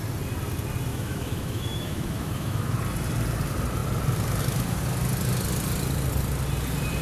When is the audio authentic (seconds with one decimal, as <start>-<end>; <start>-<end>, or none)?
0.0-0.9; 2.8-7.0